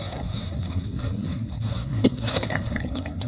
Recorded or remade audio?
remade